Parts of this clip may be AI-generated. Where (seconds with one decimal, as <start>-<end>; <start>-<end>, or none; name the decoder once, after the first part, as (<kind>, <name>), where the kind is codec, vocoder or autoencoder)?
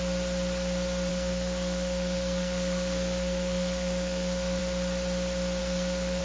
1.1-4.6 (codec, SNAC); 5.6-6.2